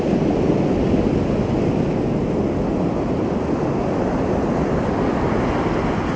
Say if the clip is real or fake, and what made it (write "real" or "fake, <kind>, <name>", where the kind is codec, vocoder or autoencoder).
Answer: real